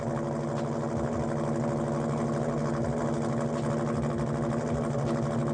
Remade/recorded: recorded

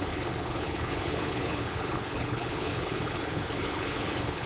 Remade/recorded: remade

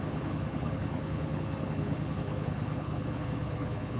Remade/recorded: remade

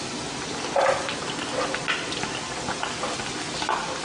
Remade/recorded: recorded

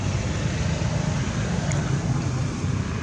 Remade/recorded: recorded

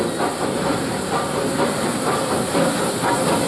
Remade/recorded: recorded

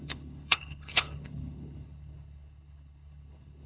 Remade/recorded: remade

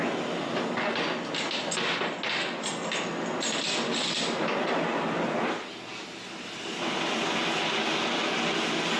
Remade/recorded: recorded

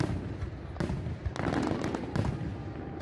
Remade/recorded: recorded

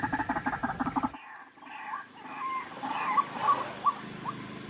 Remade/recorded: recorded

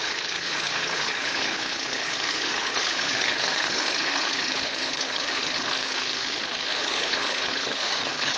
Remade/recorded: remade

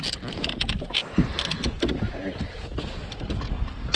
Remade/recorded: recorded